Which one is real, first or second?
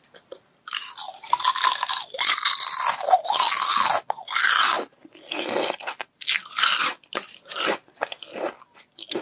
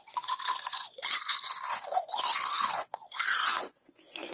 first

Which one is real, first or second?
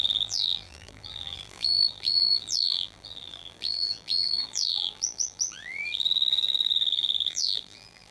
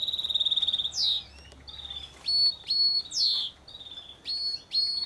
second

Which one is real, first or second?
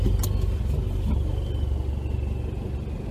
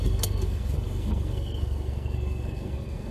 first